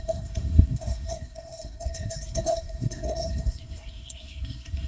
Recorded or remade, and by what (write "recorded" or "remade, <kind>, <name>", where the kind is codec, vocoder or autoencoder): remade, codec, SNAC